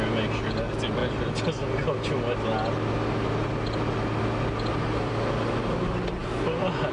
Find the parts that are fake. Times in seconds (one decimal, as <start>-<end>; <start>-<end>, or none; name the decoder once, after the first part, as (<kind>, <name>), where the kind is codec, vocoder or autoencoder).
none